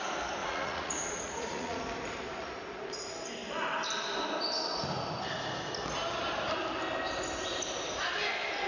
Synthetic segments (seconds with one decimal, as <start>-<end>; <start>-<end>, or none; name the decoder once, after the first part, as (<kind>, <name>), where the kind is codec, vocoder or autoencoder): 0.4-1.8 (vocoder, Vocos)